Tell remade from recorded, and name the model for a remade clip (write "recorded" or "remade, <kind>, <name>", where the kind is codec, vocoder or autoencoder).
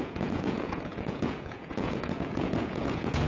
remade, vocoder, Vocos